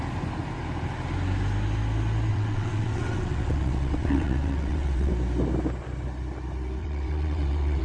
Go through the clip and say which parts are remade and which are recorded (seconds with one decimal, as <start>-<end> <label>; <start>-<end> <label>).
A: 0.0-2.3 recorded; 2.3-5.1 remade; 5.1-6.8 recorded; 6.8-7.8 remade